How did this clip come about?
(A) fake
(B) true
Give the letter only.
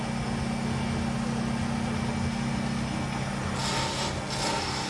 B